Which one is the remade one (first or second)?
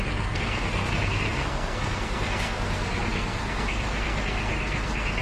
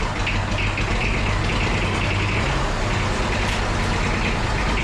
first